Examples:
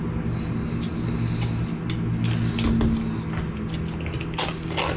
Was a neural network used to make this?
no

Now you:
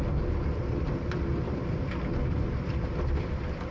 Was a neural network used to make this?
no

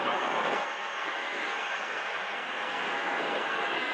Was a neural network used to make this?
yes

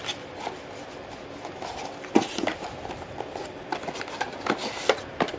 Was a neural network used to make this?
no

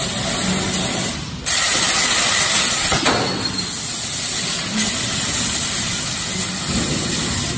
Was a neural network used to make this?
no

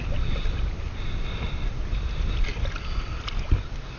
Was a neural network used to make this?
no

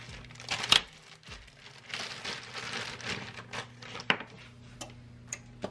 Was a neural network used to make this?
no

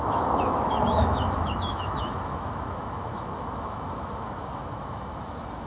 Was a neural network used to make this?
yes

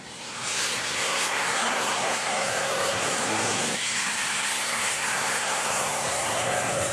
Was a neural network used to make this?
yes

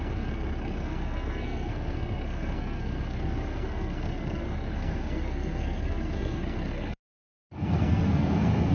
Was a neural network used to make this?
yes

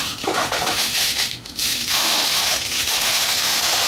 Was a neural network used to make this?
yes